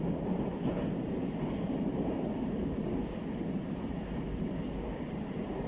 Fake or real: fake